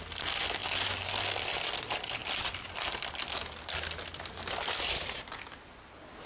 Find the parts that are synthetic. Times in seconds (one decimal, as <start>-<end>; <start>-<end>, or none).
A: 0.6-1.1